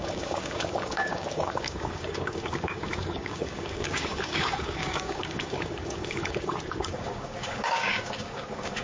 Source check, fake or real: fake